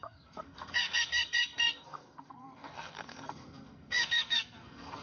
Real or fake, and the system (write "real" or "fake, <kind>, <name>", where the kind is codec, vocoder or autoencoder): fake, codec, SNAC